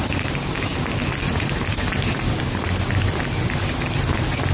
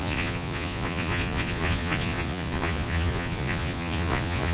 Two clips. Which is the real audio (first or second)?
first